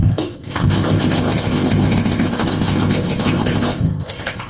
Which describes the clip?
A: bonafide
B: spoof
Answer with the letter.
B